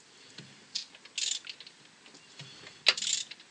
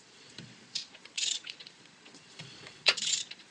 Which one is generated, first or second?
second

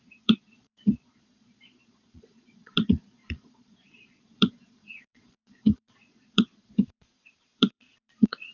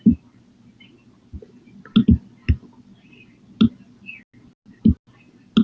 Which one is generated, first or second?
first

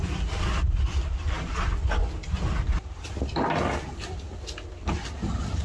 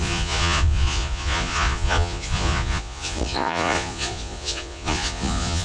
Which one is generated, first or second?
second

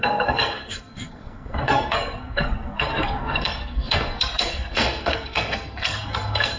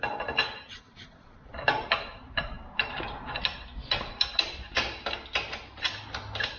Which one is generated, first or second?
first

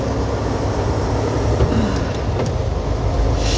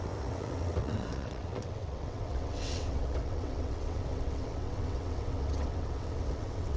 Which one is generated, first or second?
second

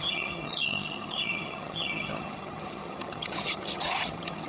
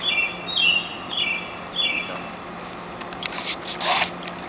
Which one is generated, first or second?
first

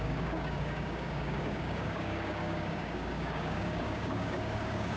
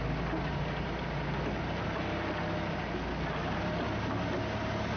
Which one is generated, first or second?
first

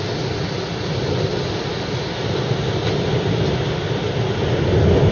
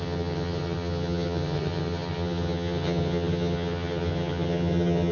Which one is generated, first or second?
second